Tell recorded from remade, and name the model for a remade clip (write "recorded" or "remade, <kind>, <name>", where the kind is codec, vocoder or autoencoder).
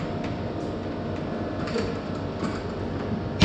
recorded